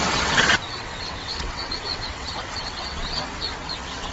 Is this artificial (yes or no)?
yes